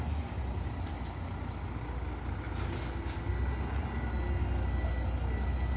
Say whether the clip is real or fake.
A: real